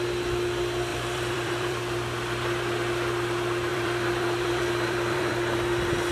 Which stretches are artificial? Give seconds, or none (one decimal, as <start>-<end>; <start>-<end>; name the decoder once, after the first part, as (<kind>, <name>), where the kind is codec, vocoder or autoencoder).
0.9-1.8 (vocoder, BigVGAN v2); 3.7-5.3